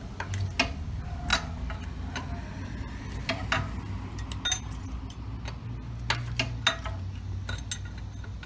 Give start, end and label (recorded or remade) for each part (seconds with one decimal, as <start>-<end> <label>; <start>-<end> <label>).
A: 0.0-8.5 recorded